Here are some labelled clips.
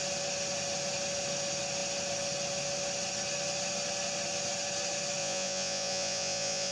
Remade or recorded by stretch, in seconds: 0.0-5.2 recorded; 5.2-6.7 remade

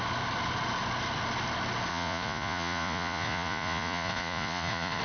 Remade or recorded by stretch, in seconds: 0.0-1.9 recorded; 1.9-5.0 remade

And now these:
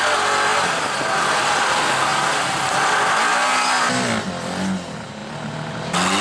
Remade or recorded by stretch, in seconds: 0.0-6.2 recorded